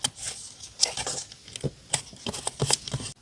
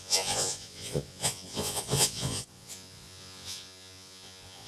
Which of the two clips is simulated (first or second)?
second